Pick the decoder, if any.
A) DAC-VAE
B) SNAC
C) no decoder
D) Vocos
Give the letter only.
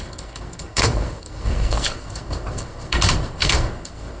B